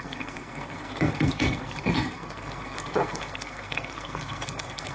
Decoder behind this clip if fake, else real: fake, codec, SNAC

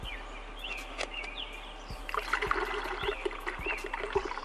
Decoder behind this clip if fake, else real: real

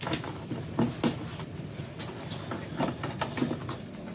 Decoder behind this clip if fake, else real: real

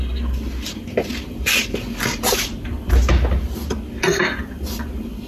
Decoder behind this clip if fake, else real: real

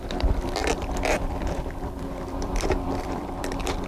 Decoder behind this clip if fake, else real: fake, vocoder, BigVGAN v2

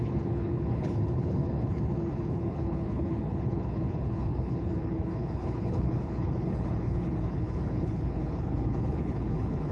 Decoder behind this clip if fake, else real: fake, codec, HILCodec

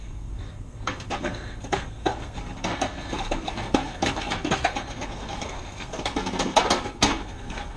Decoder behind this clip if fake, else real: fake, codec, SNAC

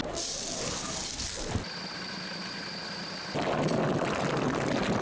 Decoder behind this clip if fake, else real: real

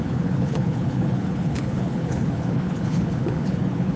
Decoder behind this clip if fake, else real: fake, codec, HILCodec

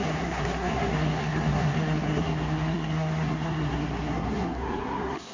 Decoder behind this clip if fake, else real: fake, codec, SNAC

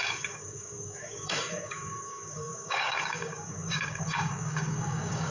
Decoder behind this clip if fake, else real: fake, codec, DAC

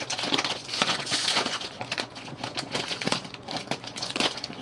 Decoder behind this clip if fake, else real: fake, vocoder, Vocos